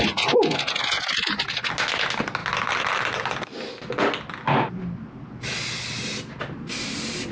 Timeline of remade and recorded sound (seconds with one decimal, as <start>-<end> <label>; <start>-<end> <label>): 0.0-7.3 recorded